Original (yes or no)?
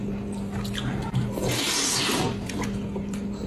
yes